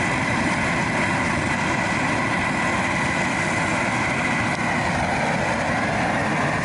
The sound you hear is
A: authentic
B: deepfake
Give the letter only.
A